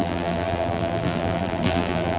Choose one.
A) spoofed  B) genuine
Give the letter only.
A